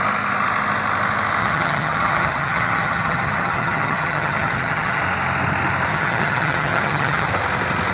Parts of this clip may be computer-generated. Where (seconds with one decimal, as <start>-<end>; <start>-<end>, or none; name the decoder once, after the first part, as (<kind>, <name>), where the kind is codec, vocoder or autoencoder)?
1.4-5.0 (vocoder, HiFi-GAN); 5.9-7.3